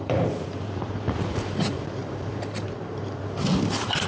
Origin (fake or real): fake